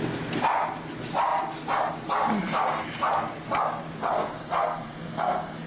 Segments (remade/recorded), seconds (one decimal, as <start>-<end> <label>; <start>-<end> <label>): 0.0-4.0 recorded; 4.0-5.7 remade